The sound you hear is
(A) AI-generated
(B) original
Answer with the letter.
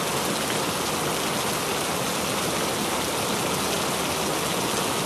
B